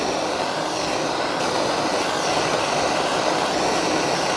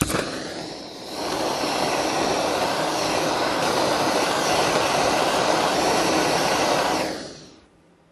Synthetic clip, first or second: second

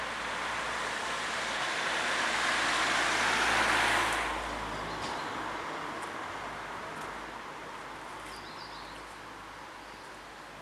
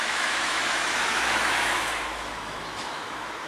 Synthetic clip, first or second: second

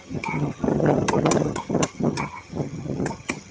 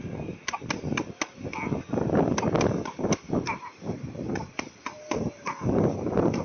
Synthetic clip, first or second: first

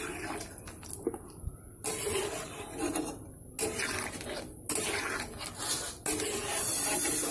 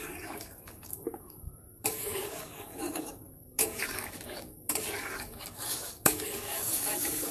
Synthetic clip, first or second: second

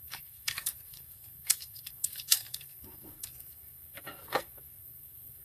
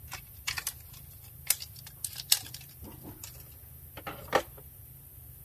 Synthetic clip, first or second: first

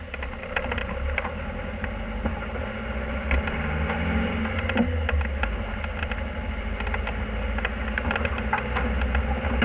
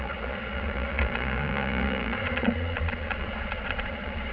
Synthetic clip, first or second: second